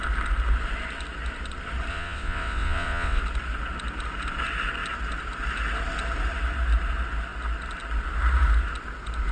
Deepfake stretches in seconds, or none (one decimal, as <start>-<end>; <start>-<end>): 1.9-3.2